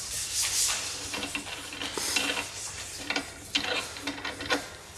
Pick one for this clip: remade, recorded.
recorded